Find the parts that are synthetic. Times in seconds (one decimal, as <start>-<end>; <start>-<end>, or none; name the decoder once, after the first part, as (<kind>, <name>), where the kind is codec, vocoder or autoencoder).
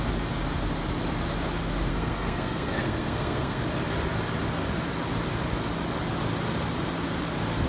1.9-3.6 (codec, SNAC)